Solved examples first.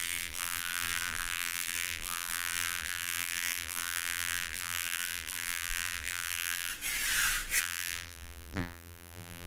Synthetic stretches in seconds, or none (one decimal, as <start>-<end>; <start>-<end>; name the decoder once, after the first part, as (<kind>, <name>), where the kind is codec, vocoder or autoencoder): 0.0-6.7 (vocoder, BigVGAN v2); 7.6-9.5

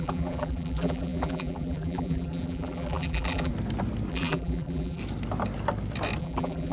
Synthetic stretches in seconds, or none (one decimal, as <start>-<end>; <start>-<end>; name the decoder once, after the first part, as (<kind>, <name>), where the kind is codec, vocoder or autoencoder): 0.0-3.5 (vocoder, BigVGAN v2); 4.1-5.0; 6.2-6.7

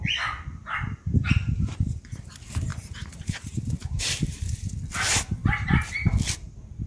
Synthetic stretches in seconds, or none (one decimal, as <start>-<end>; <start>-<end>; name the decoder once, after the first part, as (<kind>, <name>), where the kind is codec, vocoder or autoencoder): 2.7-4.7 (vocoder, BigVGAN v2)